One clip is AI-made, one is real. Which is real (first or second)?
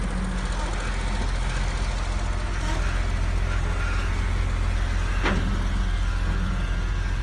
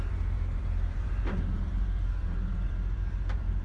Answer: first